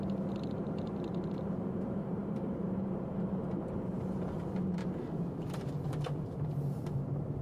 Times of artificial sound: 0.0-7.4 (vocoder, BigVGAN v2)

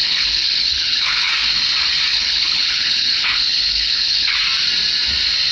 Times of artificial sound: 0.0-1.3 (codec, HILCodec); 2.1-4.4

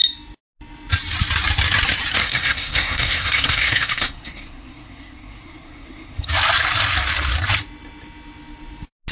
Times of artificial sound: 2.2-6.3 (codec, SNAC)

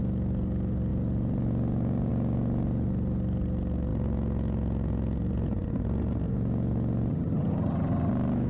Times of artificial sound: 7.1-8.1 (vocoder, HiFi-GAN)